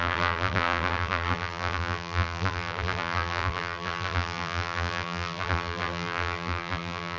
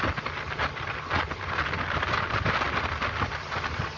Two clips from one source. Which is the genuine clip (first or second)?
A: second